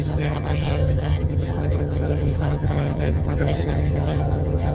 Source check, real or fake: fake